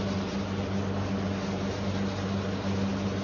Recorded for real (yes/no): yes